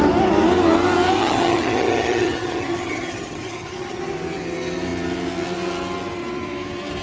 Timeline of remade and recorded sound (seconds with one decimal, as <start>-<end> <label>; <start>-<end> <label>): 0.0-1.2 recorded; 1.2-4.0 remade; 4.0-7.0 recorded